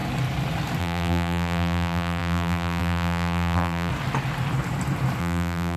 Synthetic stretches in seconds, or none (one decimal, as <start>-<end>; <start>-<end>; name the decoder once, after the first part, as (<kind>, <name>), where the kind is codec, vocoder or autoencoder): 0.8-3.9 (vocoder, BigVGAN v2); 5.2-5.8